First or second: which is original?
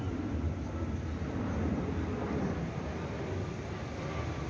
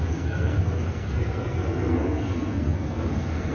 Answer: first